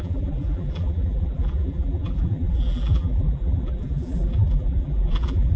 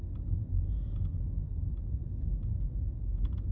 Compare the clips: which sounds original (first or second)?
second